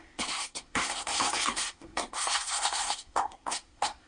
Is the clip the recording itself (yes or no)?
no